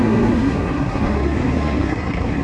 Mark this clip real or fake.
fake